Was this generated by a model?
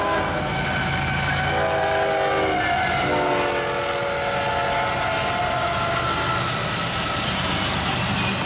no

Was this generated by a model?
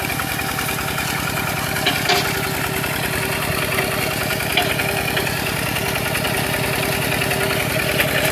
no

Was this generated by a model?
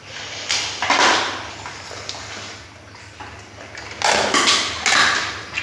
no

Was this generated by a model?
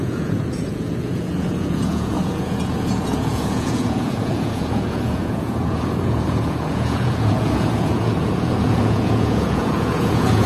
yes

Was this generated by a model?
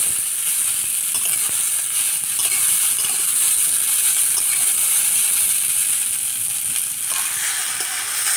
no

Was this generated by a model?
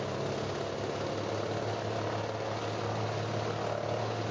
no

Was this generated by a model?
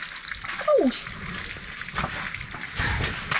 no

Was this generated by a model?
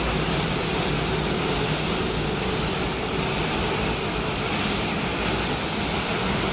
no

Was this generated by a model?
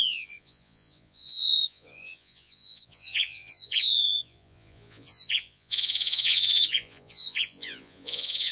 yes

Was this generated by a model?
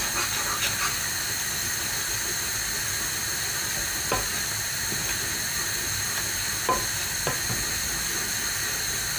no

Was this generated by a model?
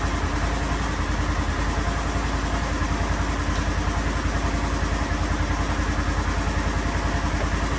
no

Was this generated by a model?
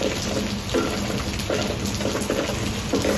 no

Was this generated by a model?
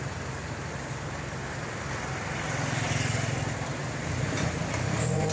no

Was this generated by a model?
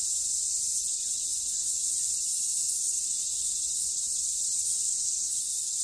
yes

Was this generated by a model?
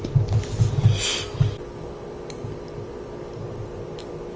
no